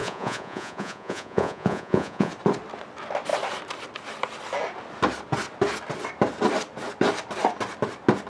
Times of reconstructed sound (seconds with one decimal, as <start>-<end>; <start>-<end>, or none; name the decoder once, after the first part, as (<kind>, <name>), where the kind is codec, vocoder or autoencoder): 0.0-2.3 (vocoder, Vocos)